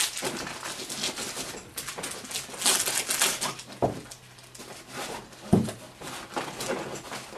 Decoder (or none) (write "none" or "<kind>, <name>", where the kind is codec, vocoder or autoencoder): none